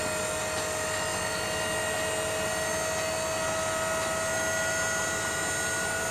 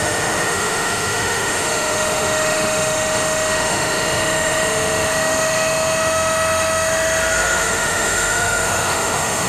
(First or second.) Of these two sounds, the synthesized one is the second